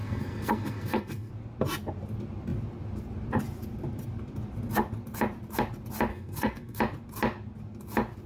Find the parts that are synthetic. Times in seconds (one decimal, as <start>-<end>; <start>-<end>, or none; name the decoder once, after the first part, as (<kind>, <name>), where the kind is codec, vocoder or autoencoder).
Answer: 0.0-1.3 (codec, SNAC); 6.1-6.8